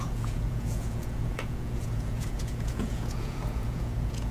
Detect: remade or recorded remade